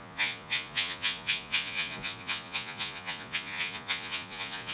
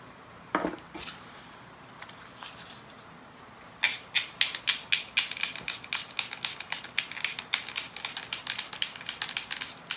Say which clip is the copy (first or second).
first